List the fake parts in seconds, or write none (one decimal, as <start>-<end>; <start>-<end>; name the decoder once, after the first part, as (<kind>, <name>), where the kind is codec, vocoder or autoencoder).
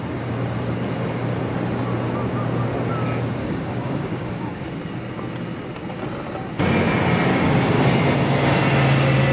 3.4-4.7 (codec, DAC); 7.3-8.0